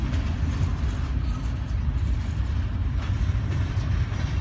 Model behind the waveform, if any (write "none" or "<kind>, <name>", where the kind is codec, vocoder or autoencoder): none